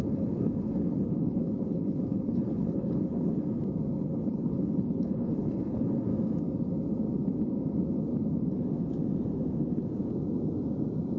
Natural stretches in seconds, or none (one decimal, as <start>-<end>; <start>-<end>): 3.4-4.0; 6.1-11.2